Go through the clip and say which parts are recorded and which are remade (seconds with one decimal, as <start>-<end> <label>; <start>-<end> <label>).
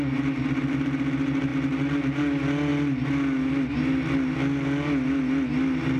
0.0-6.0 recorded